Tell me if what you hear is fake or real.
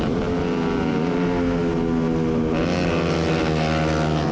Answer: real